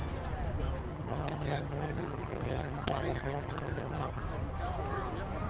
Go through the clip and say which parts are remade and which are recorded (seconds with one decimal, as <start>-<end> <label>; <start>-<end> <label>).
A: 0.0-0.9 recorded; 0.9-4.2 remade; 4.2-5.5 recorded